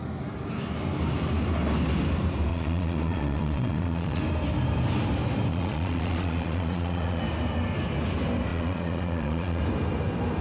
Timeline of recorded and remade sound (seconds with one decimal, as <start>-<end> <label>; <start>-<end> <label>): 0.0-2.5 recorded; 2.5-4.2 remade; 4.2-5.5 recorded; 5.5-7.2 remade; 7.2-8.5 recorded; 8.5-9.6 remade; 9.6-10.4 recorded